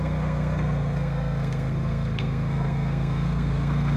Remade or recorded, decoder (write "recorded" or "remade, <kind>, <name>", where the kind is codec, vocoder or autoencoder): remade, codec, SNAC